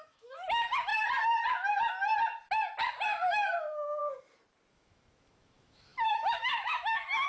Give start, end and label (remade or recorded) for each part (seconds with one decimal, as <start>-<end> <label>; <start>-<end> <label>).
0.0-0.9 remade; 0.9-2.9 recorded; 2.9-4.0 remade; 4.0-4.7 recorded; 4.7-7.3 remade